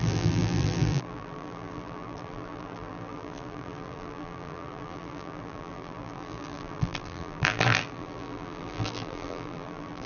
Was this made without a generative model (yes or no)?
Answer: no